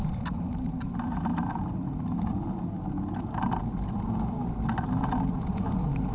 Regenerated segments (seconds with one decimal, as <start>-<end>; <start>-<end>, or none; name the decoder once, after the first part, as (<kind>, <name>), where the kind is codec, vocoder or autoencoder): none